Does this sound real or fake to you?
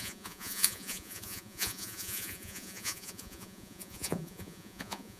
fake